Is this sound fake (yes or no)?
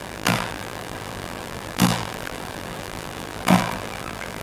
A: yes